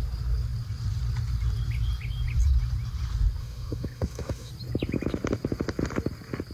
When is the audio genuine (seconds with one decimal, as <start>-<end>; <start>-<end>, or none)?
0.0-3.4; 4.5-6.5